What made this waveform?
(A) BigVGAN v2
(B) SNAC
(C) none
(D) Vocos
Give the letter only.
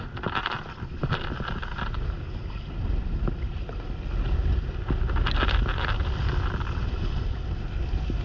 C